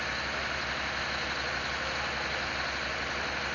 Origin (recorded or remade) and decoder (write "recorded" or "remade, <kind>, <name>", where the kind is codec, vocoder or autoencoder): recorded